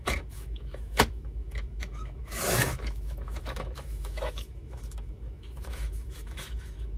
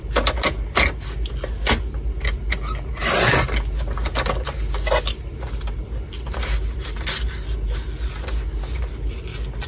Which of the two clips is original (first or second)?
second